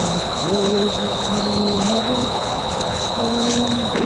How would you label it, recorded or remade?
remade